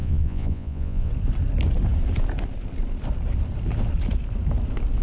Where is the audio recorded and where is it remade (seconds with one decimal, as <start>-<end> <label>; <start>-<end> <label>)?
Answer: 0.0-1.1 remade; 1.1-5.0 recorded